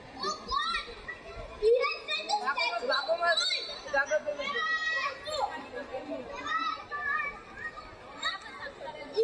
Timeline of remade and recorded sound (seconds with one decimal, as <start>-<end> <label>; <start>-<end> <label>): 0.0-9.2 recorded